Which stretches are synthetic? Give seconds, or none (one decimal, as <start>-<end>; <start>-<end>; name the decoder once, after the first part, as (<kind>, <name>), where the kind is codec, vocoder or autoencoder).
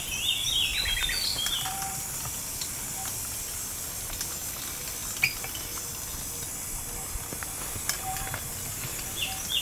none